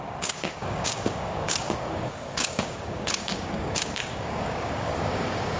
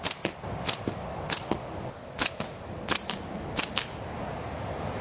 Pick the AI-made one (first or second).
first